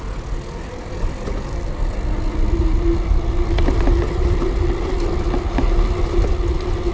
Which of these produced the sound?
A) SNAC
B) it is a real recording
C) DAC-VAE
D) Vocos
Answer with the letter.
B